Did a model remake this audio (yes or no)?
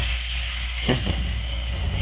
yes